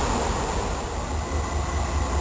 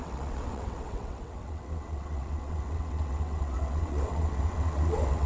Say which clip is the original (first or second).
first